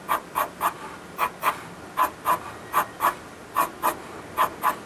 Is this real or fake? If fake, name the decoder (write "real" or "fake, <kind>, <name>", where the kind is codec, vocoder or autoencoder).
real